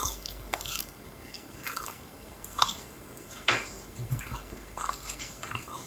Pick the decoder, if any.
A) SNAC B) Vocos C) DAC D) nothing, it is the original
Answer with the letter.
A